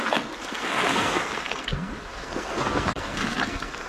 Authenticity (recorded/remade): remade